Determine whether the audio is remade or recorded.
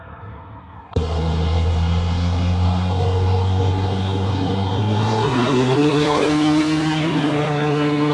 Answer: remade